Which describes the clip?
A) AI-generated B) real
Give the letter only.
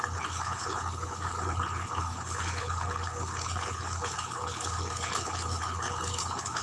A